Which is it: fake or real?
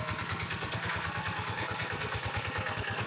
fake